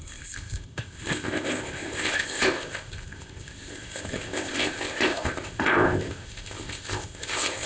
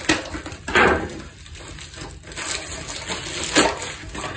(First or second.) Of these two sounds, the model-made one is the first